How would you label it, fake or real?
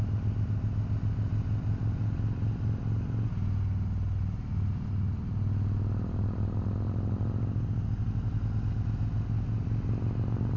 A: real